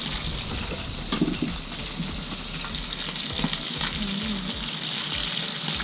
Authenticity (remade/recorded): recorded